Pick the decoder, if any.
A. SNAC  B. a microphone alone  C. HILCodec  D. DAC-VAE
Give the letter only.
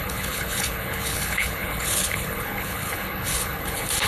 C